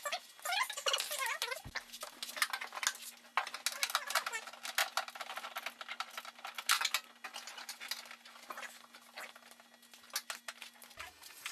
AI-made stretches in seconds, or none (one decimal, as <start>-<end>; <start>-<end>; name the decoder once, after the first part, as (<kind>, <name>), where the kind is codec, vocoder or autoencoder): none